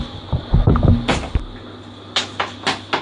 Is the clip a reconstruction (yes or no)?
no